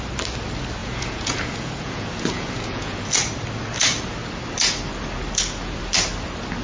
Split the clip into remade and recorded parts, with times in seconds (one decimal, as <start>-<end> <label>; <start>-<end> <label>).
0.0-0.8 recorded; 0.8-3.1 remade; 3.1-6.6 recorded